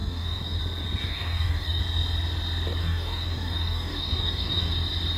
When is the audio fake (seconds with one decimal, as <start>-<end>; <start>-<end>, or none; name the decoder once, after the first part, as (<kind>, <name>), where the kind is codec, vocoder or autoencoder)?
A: 0.0-0.6 (codec, DAC); 1.0-1.8; 2.8-4.7